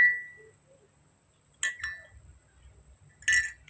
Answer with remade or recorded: recorded